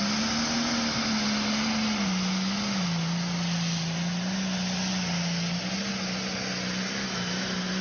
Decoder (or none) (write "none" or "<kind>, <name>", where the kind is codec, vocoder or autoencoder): none